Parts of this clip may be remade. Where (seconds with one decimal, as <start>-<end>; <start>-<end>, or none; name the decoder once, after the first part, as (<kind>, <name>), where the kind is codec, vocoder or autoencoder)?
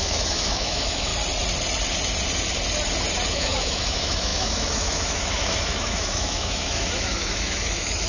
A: 0.0-1.1 (autoencoder, DAC-VAE); 3.3-8.1